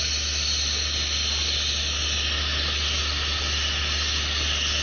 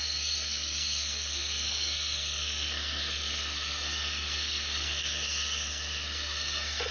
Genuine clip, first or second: first